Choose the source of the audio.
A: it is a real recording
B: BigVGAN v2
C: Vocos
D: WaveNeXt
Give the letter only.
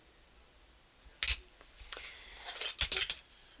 A